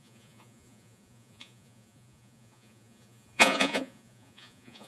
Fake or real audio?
fake